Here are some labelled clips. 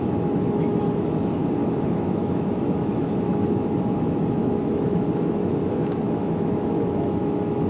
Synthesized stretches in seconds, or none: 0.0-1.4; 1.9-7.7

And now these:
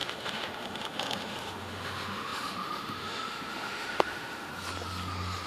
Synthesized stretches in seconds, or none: 0.0-4.5

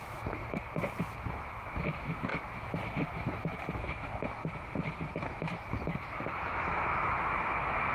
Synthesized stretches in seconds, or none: 0.0-0.4; 1.0-4.4; 5.2-7.9

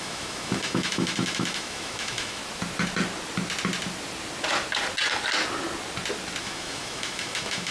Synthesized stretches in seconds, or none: 0.0-2.4; 6.4-7.7

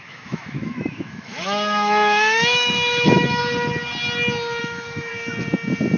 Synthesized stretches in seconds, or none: 0.0-3.4; 4.6-5.1

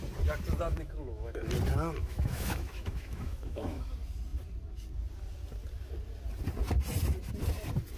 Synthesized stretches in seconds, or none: 0.7-1.4; 2.0-3.9